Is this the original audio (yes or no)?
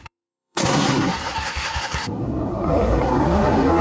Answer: no